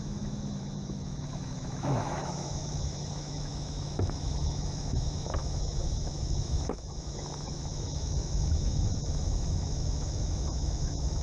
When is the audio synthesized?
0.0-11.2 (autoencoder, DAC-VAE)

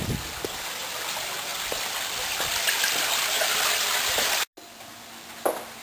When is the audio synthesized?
none

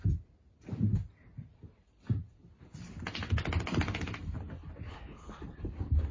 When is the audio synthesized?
4.9-5.4 (codec, HILCodec)

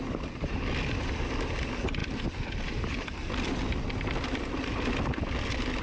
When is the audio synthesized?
none